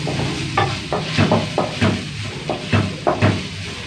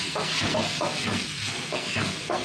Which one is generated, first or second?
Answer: second